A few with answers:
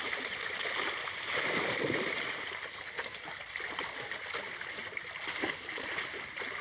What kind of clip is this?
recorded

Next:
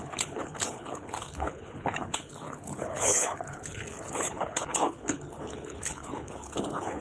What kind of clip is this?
remade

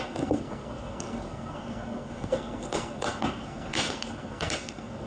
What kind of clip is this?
remade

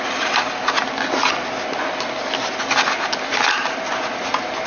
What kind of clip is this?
recorded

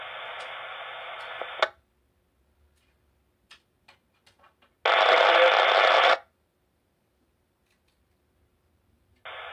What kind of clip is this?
recorded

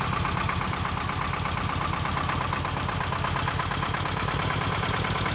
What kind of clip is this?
recorded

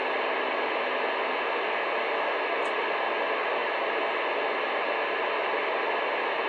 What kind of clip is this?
recorded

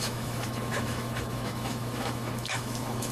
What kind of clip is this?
remade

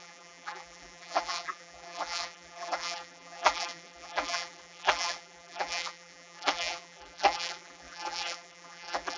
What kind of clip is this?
remade